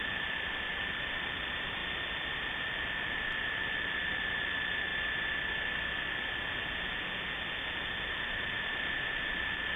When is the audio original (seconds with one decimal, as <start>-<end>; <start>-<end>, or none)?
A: 1.8-2.3; 4.9-8.1